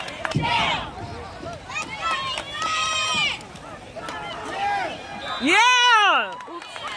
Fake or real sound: real